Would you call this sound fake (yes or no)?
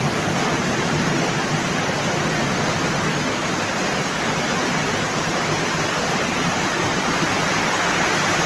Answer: no